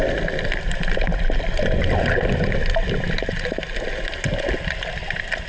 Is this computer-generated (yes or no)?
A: no